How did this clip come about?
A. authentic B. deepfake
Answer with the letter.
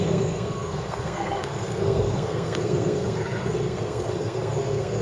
B